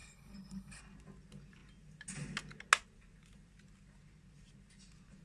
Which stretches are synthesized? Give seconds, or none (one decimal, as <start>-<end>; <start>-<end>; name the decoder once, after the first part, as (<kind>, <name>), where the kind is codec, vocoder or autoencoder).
0.0-0.8 (codec, HILCodec)